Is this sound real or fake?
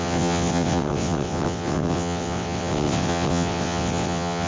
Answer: fake